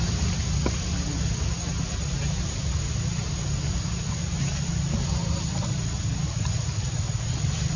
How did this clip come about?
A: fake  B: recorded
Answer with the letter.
B